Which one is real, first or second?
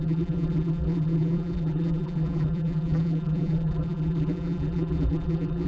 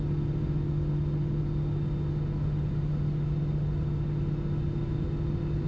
second